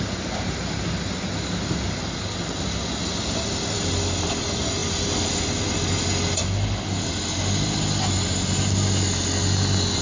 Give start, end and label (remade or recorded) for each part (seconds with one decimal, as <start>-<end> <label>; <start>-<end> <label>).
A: 0.0-10.0 recorded